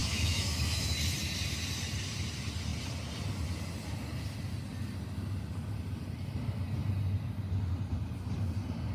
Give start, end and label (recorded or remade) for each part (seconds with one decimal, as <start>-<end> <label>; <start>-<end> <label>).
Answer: 0.0-0.9 remade; 0.9-8.9 recorded